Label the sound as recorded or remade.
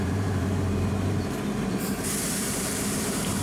remade